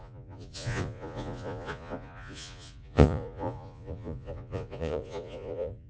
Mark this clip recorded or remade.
remade